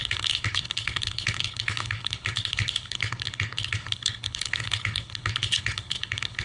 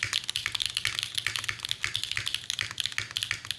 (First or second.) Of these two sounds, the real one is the second